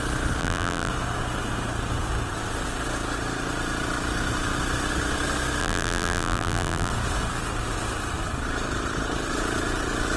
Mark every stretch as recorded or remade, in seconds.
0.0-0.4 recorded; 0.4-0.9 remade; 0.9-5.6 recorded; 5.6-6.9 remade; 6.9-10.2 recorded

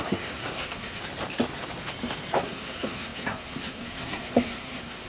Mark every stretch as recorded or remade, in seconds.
0.0-1.0 remade; 1.0-2.4 recorded; 2.4-5.1 remade

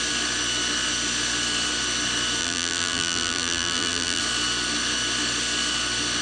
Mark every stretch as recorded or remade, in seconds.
0.0-2.4 recorded; 2.4-4.2 remade; 4.2-6.2 recorded

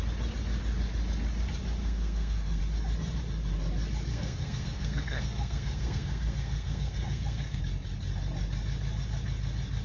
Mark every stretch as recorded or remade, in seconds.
0.0-1.8 recorded; 1.8-2.6 remade; 2.6-4.1 recorded; 4.1-7.6 remade; 7.6-9.8 recorded

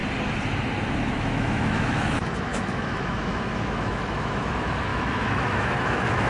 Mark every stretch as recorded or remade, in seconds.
0.0-1.1 recorded; 1.1-6.3 remade

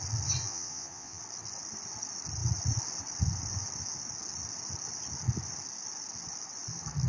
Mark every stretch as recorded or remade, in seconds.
0.0-0.4 recorded; 0.4-1.2 remade; 1.2-7.1 recorded

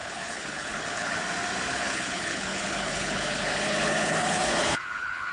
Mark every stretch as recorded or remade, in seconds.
0.0-1.2 remade; 1.2-1.7 recorded; 1.7-5.3 remade

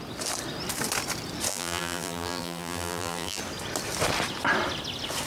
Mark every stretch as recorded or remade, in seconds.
0.0-1.5 recorded; 1.5-3.4 remade; 3.4-5.3 recorded